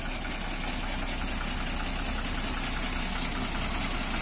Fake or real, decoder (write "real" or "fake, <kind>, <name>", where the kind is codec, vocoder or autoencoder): real